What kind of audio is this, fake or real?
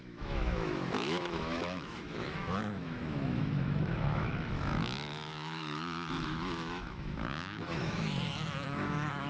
fake